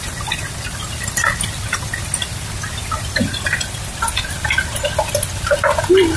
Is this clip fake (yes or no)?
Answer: no